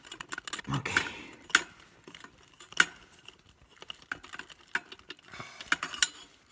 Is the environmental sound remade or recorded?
recorded